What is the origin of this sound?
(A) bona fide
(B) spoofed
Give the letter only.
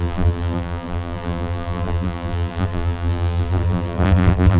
B